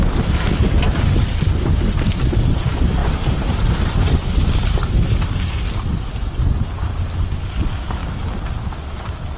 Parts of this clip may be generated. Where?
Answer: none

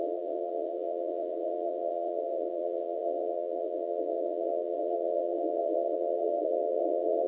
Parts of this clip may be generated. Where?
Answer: 0.0-7.3 (vocoder, BigVGAN v2)

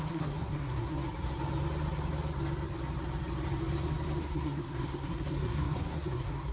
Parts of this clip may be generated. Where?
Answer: 0.0-1.0 (codec, SNAC); 4.2-6.5

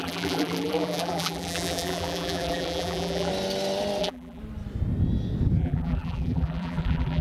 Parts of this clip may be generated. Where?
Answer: 0.0-3.3 (vocoder, BigVGAN v2); 4.0-4.4; 5.6-7.2

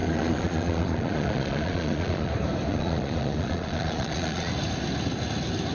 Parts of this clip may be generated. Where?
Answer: 0.0-2.3 (vocoder, Vocos); 2.7-4.5